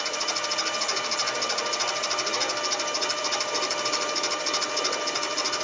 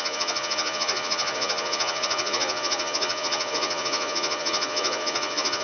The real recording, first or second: first